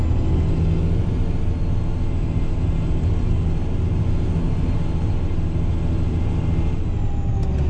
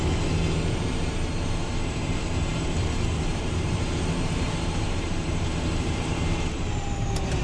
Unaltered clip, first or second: first